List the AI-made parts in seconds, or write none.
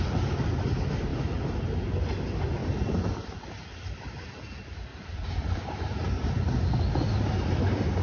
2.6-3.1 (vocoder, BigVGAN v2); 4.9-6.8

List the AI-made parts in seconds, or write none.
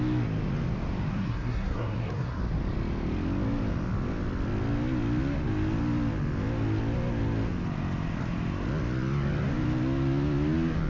1.1-2.4 (codec, SNAC)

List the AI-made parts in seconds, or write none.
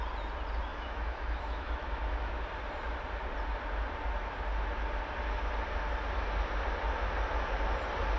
0.7-2.3 (autoencoder, DAC-VAE)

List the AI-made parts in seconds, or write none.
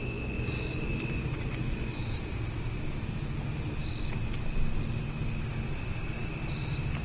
0.0-2.0 (vocoder, Vocos)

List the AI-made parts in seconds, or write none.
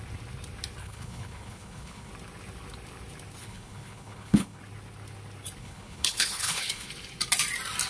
0.8-2.1 (codec, HILCodec); 3.4-4.6; 5.6-6.9